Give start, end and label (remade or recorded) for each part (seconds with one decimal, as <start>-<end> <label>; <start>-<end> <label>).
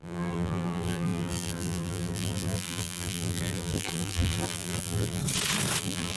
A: 0.0-5.2 remade; 5.2-5.8 recorded; 5.8-6.2 remade